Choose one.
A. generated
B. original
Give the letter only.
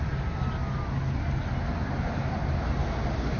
B